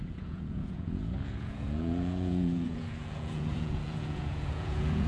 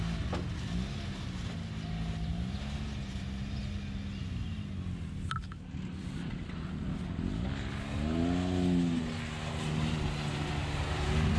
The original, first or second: second